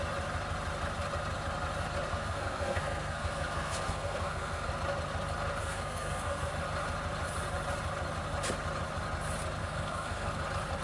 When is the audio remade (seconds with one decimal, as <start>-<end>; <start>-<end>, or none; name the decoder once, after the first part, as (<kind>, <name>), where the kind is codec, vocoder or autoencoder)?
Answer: 2.1-4.7 (codec, SNAC); 5.6-6.5; 9.6-10.3